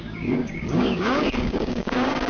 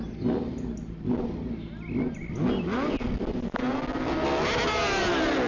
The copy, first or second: first